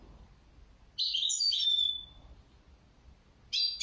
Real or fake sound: real